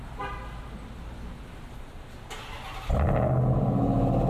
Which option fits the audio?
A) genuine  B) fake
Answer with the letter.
A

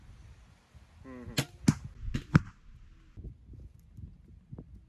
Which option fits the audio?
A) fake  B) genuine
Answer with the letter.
B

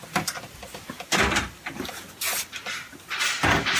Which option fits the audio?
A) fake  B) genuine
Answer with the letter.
B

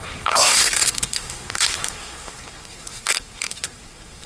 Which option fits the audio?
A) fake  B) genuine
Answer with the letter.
A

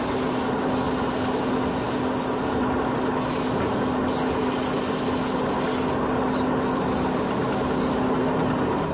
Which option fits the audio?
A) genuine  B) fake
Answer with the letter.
A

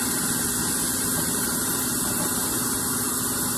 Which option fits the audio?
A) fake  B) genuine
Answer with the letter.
A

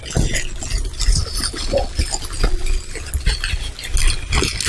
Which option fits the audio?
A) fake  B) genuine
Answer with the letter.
B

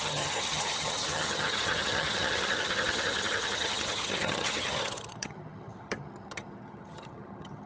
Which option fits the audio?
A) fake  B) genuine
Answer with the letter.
A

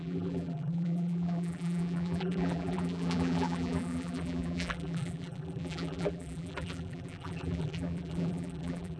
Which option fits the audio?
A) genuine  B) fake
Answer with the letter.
B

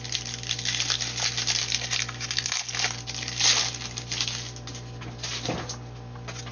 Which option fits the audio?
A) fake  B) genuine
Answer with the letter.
B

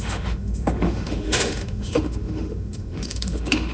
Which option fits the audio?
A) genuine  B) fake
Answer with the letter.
B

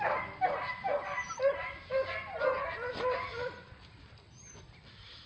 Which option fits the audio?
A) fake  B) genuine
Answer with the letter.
B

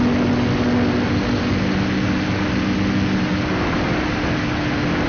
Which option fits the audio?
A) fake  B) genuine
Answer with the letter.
B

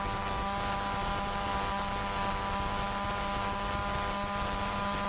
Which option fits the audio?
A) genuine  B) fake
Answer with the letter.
A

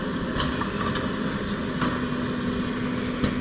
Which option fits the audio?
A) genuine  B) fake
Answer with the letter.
A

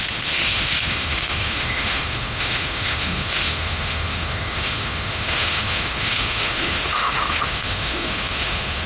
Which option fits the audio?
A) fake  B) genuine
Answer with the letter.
A